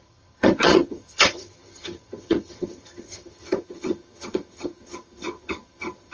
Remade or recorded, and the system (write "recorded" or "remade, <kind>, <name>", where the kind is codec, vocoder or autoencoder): remade, vocoder, HiFi-GAN